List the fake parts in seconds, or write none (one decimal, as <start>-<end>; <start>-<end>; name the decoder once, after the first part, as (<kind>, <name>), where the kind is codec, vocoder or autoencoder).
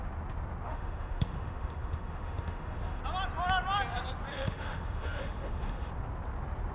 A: 0.7-3.0 (autoencoder, DAC-VAE); 4.3-5.9